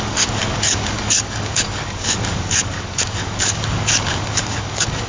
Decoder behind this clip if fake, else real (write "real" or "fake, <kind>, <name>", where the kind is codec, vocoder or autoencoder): fake, codec, DAC